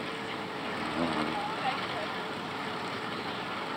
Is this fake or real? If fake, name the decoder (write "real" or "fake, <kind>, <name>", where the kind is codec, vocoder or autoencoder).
fake, vocoder, BigVGAN v2